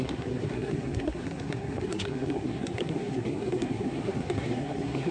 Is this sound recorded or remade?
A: remade